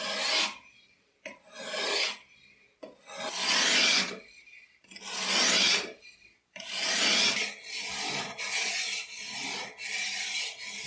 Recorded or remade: recorded